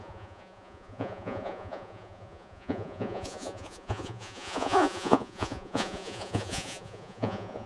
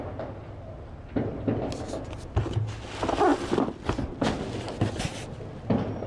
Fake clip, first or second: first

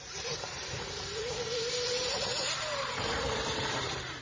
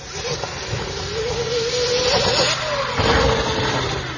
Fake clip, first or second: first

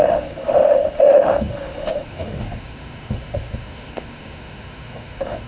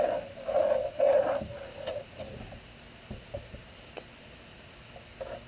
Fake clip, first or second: first